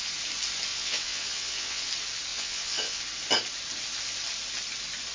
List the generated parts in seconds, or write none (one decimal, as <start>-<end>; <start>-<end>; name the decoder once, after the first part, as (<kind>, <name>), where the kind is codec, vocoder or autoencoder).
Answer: 0.7-1.9 (vocoder, WaveNeXt); 2.3-3.0